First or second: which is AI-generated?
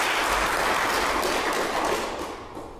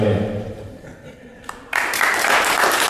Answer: second